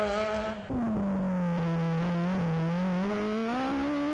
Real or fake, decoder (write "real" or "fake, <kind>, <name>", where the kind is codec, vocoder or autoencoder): real